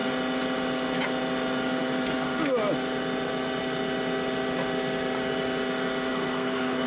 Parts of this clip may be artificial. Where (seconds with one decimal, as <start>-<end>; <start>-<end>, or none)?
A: 6.1-6.9